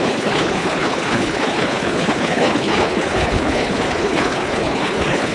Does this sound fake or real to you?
fake